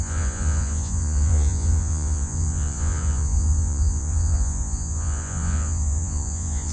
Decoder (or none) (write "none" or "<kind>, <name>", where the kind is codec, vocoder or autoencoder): vocoder, Vocos